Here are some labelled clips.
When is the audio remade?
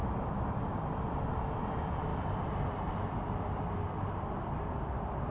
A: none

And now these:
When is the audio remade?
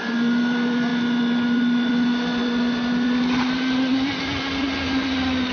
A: none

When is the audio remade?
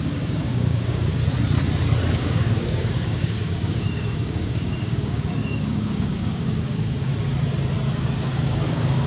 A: 0.0-1.1 (codec, DAC); 2.1-7.1; 7.9-9.1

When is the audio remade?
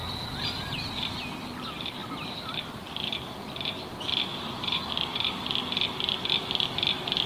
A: 0.0-0.9 (vocoder, BigVGAN v2)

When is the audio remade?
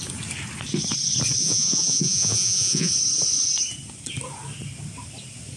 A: 1.4-2.9 (vocoder, Vocos)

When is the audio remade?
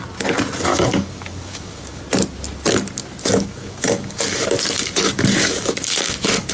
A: 0.7-2.0 (codec, DAC); 3.2-6.5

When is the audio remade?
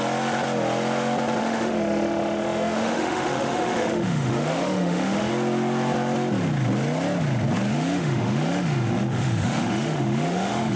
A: 1.4-5.3 (autoencoder, DAC-VAE); 7.7-10.8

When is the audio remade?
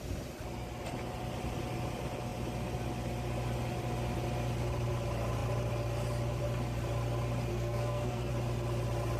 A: 7.5-8.3 (codec, SNAC)